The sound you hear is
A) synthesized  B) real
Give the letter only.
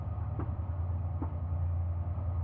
B